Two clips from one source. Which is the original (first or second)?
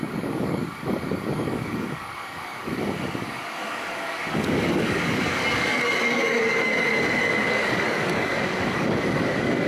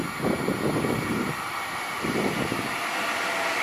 second